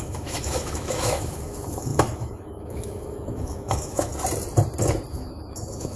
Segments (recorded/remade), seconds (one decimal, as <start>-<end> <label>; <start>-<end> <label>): 0.0-4.1 remade; 4.1-5.1 recorded; 5.1-6.0 remade